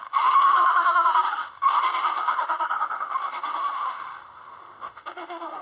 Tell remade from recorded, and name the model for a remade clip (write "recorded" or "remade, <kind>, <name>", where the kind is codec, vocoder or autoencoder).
remade, autoencoder, DAC-VAE